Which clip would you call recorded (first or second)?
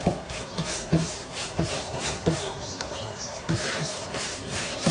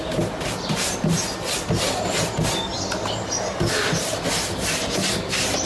second